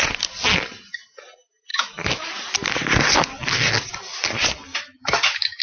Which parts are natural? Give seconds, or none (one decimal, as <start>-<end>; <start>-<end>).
0.0-1.7; 2.3-4.7